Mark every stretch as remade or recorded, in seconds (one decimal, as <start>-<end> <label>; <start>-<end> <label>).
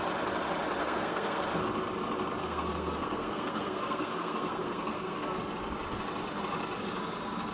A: 0.0-0.8 recorded; 0.8-1.4 remade; 1.4-2.4 recorded; 2.4-5.4 remade; 5.4-7.5 recorded